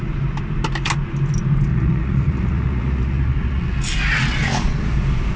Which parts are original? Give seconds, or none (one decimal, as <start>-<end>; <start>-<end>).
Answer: 0.0-1.7; 3.8-5.4